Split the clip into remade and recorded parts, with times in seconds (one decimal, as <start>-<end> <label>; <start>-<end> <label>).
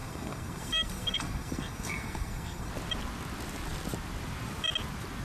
0.0-2.7 remade; 2.7-5.2 recorded